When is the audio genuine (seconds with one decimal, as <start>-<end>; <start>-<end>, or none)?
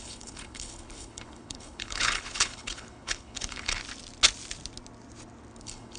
3.8-5.6